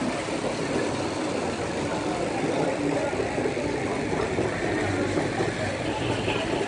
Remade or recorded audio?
recorded